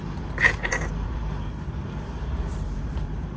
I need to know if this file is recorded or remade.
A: remade